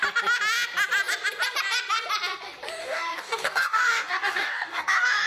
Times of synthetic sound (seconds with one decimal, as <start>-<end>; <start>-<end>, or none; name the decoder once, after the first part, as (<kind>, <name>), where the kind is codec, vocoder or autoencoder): 2.8-5.3 (codec, DAC)